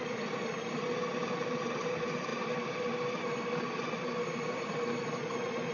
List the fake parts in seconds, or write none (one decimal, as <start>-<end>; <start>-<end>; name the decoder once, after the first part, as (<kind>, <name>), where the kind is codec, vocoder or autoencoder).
none